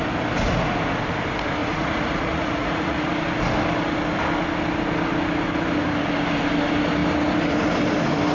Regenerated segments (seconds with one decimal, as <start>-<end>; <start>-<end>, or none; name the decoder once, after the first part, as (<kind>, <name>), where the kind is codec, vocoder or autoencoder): 1.6-3.1 (vocoder, Vocos)